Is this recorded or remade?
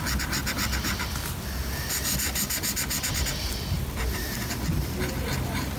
recorded